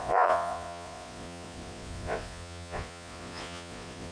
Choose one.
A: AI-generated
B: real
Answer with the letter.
A